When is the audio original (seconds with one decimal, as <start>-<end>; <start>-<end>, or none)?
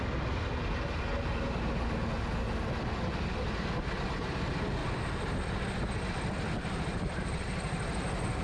0.0-8.4